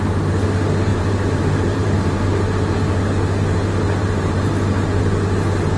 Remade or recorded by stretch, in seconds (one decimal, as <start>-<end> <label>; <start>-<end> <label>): 0.0-0.9 recorded; 0.9-2.2 remade; 2.2-4.0 recorded; 4.0-4.5 remade; 4.5-5.8 recorded